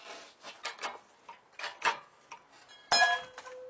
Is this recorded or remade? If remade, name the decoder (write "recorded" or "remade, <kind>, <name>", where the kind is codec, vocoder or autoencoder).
recorded